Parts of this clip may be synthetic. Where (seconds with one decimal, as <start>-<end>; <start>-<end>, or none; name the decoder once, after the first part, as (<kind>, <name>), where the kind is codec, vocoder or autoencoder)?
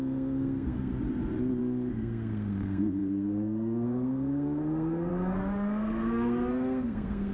0.0-0.9 (codec, SNAC); 1.6-7.3